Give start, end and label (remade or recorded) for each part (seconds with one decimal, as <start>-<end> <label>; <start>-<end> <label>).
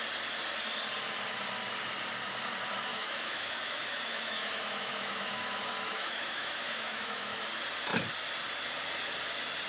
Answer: 0.0-2.9 recorded; 2.9-7.3 remade; 7.3-9.7 recorded